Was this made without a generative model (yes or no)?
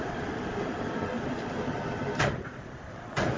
yes